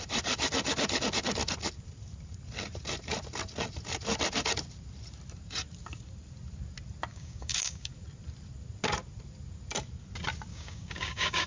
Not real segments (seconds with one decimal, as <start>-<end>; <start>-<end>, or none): 7.1-7.9; 10.5-11.5

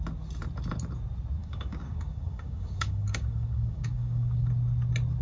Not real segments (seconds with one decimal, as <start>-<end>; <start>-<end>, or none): 1.4-4.5